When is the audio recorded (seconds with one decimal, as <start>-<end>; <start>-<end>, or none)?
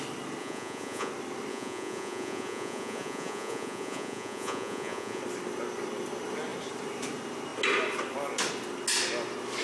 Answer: 0.0-0.4; 1.1-1.5; 5.2-9.6